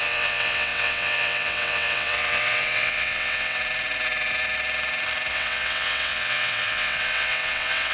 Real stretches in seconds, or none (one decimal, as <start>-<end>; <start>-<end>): 3.6-5.3